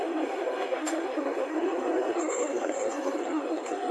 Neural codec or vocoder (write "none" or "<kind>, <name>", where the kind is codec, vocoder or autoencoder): codec, SNAC